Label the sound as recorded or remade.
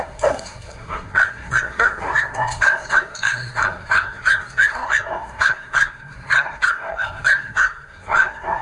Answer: remade